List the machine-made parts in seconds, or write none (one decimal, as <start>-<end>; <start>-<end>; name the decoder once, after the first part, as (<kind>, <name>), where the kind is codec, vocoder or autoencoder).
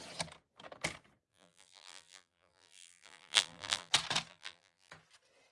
1.3-3.9 (vocoder, BigVGAN v2); 4.3-4.9